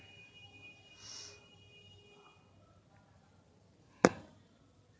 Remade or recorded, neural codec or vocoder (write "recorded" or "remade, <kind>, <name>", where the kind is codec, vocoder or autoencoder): recorded